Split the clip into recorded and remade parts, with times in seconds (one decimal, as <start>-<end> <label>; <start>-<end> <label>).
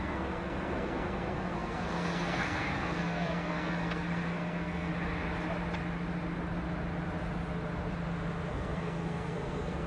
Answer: 0.0-4.9 remade; 4.9-8.5 recorded; 8.5-9.9 remade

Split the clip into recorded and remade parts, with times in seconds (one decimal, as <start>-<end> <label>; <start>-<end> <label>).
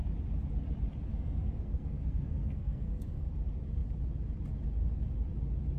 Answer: 0.0-1.1 recorded; 1.1-3.3 remade; 3.3-5.8 recorded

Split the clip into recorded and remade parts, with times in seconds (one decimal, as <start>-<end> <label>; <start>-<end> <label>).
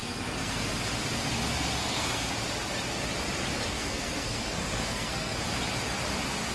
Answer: 0.0-0.7 remade; 0.7-1.8 recorded; 1.8-2.3 remade; 2.3-3.6 recorded; 3.6-5.4 remade; 5.4-6.5 recorded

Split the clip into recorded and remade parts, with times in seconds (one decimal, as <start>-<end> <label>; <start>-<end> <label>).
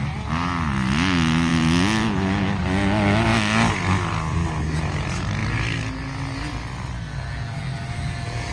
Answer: 0.0-8.5 recorded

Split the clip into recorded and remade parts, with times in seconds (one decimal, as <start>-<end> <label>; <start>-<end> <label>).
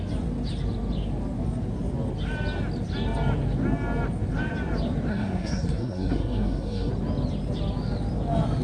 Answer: 0.0-5.1 recorded; 5.1-6.9 remade; 6.9-8.6 recorded